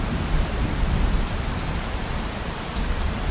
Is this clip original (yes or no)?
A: no